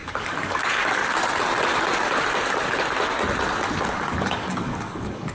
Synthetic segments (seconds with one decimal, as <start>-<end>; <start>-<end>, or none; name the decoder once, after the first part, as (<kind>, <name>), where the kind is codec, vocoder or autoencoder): 0.0-1.0 (codec, DAC); 3.8-5.3